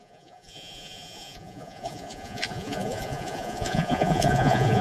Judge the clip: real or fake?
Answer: fake